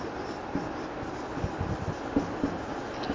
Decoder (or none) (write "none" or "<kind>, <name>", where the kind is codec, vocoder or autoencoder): none